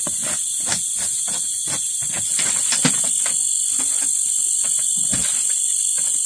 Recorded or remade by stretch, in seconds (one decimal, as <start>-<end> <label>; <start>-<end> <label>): 0.0-6.3 recorded